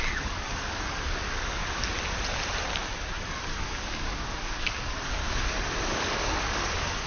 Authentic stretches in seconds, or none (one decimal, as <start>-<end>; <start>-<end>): 1.6-3.4; 5.2-5.8